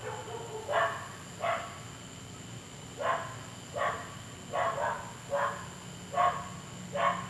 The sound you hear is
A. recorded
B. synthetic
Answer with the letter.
A